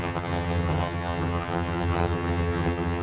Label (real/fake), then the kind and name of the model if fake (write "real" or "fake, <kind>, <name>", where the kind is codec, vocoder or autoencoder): fake, vocoder, HiFi-GAN